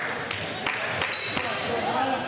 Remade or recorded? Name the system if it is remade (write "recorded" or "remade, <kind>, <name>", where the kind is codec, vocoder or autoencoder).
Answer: recorded